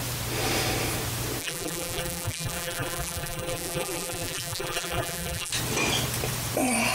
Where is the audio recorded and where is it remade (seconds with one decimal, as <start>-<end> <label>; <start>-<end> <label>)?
0.0-1.4 recorded; 1.4-5.5 remade; 5.5-6.9 recorded